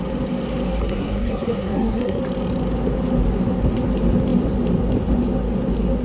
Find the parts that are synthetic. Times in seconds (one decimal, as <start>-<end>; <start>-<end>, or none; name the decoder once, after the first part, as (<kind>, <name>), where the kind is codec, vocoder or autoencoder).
0.8-2.2 (codec, SNAC)